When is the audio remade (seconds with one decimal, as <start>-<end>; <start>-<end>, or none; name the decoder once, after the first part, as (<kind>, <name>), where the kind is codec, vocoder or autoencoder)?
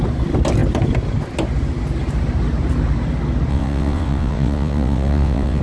3.5-5.6 (vocoder, WaveNeXt)